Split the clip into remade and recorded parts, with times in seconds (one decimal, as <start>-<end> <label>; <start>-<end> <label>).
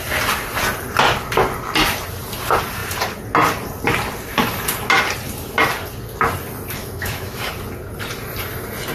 0.0-6.8 recorded; 6.8-7.5 remade; 7.5-8.9 recorded